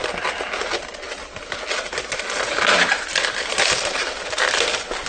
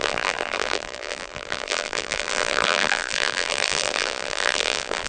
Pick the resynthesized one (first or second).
second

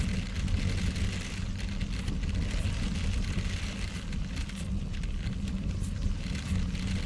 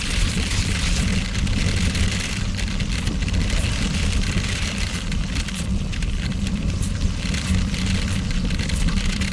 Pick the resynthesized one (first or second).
second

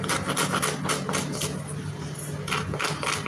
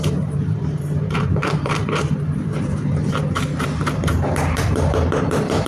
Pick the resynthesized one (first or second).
second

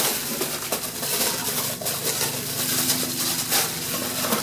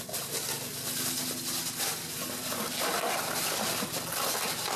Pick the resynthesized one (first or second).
first